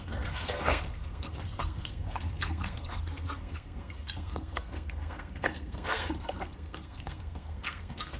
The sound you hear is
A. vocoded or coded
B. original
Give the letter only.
A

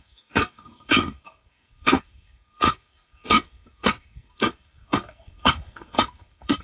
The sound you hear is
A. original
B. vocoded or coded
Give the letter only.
B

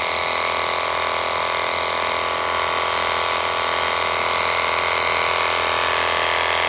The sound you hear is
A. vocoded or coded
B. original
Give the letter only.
B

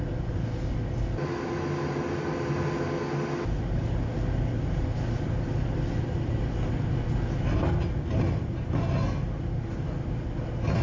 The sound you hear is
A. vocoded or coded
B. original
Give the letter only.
B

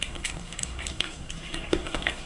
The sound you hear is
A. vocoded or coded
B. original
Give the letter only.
A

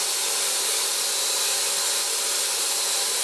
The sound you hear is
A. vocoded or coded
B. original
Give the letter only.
B